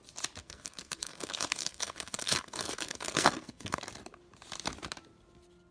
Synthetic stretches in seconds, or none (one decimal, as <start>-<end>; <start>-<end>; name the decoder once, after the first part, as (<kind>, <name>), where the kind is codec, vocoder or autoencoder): 0.4-3.8 (codec, SNAC)